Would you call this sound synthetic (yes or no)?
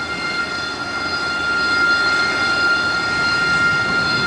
no